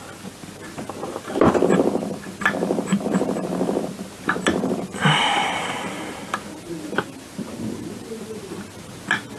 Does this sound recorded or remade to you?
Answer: recorded